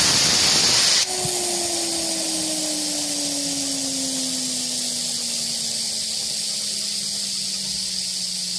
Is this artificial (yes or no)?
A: no